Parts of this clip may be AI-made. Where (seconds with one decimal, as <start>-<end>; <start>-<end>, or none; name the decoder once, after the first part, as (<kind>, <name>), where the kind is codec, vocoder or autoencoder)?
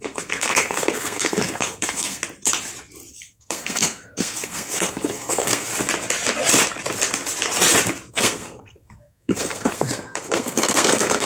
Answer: 0.0-2.2 (codec, SNAC); 3.1-5.7; 8.1-11.3